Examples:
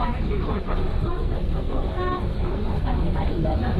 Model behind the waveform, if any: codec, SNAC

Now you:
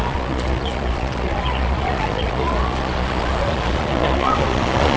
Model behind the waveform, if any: vocoder, Vocos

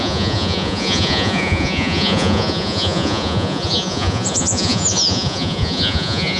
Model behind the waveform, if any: vocoder, Vocos